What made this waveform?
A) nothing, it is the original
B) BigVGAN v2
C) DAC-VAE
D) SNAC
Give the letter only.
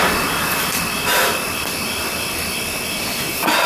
A